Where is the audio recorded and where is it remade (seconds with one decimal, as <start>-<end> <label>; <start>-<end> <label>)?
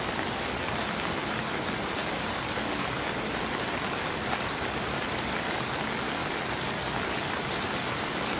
0.0-8.4 recorded